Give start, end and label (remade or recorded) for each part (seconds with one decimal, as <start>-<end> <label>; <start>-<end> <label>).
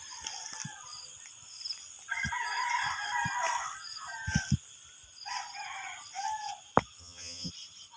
0.0-7.0 recorded; 7.0-7.5 remade; 7.5-8.0 recorded